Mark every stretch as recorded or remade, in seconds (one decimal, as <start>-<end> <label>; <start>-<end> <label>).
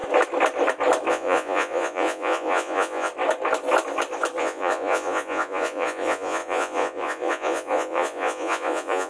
0.0-1.1 recorded; 1.1-3.1 remade; 3.1-4.4 recorded; 4.4-9.1 remade